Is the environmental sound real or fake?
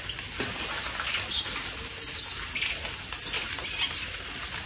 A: real